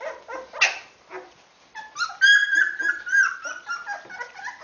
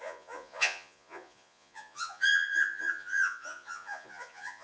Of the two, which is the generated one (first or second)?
second